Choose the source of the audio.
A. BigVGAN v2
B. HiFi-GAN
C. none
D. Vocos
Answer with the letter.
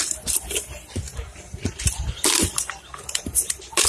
A